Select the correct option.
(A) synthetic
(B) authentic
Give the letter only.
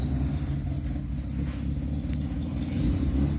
B